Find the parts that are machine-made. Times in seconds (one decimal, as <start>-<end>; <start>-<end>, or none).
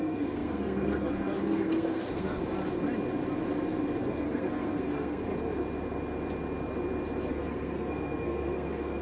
0.0-2.4; 4.0-5.3; 7.3-9.0